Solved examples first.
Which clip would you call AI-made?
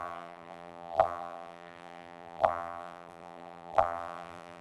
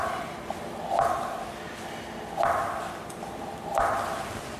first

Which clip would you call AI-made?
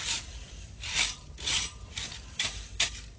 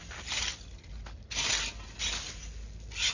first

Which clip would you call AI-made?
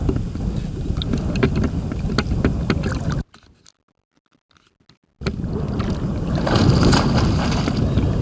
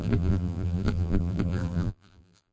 second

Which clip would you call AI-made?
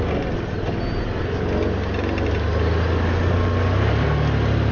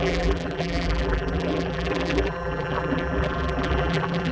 second